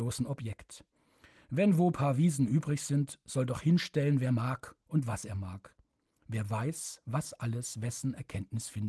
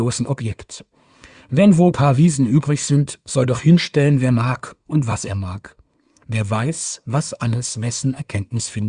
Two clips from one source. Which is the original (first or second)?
first